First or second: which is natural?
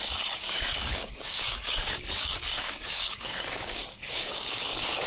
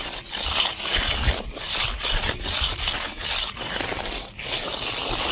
second